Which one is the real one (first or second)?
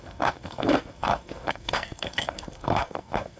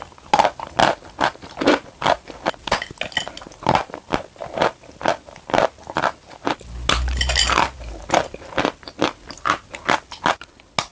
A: second